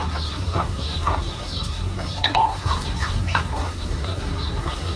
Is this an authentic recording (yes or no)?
no